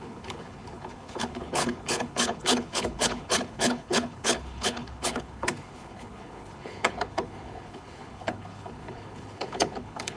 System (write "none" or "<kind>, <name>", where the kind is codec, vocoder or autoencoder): codec, HILCodec